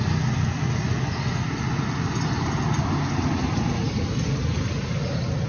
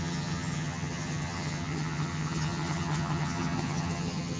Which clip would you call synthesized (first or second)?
second